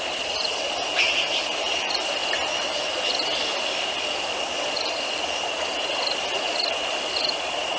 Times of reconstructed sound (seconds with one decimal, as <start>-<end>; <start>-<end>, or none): none